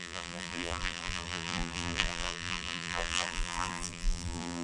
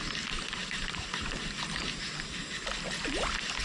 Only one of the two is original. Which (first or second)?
second